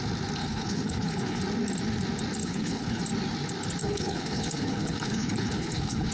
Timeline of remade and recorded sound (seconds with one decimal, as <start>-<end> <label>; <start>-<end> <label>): 0.0-0.4 recorded; 0.4-1.4 remade; 1.4-2.4 recorded; 2.4-3.0 remade; 3.0-3.8 recorded; 3.8-6.1 remade